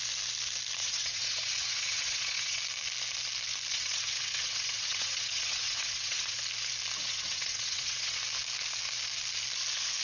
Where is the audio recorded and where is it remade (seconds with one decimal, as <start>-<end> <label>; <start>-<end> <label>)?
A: 0.0-0.8 recorded; 0.8-2.6 remade; 2.6-3.7 recorded; 3.7-6.4 remade; 6.4-7.0 recorded; 7.0-8.2 remade; 8.2-10.0 recorded